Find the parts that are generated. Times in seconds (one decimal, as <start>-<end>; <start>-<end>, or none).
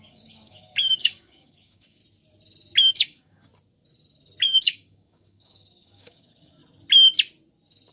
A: 0.0-2.0; 2.9-3.5; 4.6-6.6